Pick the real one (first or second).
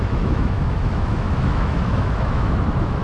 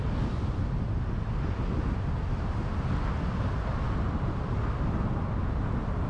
second